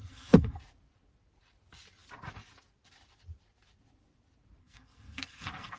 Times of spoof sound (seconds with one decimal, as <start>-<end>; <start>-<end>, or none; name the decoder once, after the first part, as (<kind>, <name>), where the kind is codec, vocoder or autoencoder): 0.0-0.6 (codec, SNAC); 4.6-5.8